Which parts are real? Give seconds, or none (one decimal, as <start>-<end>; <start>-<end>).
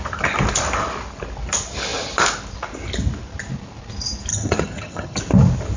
0.0-4.3; 5.2-5.8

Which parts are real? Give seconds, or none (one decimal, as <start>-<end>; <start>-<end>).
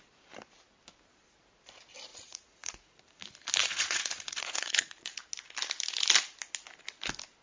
0.0-2.1; 3.0-3.6; 5.2-7.4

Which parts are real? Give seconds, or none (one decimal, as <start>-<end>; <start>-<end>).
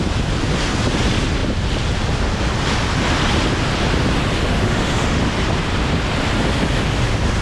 0.0-4.5; 5.2-7.4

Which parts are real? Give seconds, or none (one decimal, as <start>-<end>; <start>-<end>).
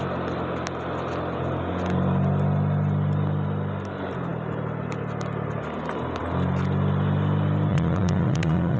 0.0-7.7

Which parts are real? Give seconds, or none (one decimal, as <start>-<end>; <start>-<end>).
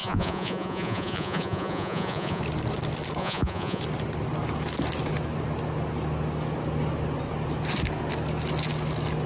2.4-3.2; 3.8-9.3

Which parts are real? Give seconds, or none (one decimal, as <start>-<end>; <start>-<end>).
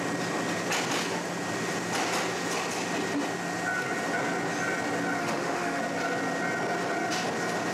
0.0-5.2; 5.8-7.7